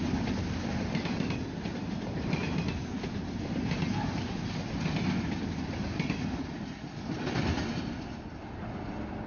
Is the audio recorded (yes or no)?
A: yes